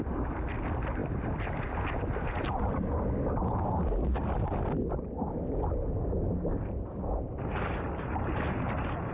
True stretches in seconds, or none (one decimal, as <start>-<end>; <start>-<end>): 0.0-9.1